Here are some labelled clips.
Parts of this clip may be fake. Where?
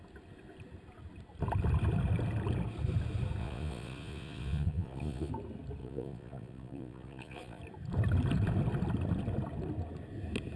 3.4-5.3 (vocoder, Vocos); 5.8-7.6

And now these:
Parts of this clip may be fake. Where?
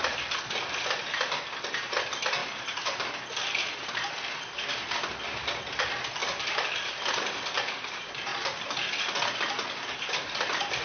0.0-2.4 (vocoder, BigVGAN v2); 3.9-10.8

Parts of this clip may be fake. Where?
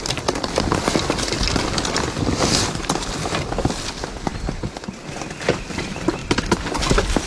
none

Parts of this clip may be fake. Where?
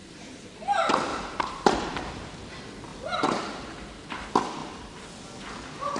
0.0-0.5 (vocoder, BigVGAN v2); 1.1-1.7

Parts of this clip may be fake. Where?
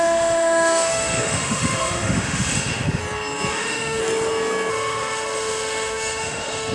0.0-3.0 (autoencoder, DAC-VAE); 3.5-4.0; 4.7-6.7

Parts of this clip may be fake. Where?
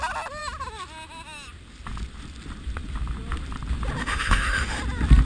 4.0-4.8 (autoencoder, DAC-VAE)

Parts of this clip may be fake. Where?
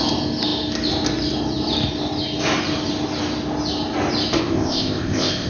4.4-5.5 (codec, ZipCodec)